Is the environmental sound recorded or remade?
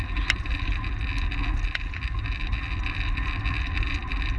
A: recorded